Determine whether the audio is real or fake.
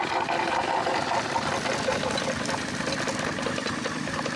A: real